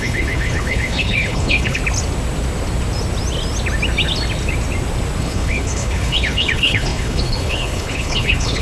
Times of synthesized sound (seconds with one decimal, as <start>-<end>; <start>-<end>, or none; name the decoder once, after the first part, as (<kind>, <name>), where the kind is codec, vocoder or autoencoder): 0.0-1.8 (codec, HILCodec); 5.2-8.6